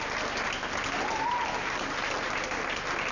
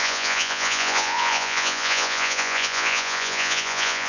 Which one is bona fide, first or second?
first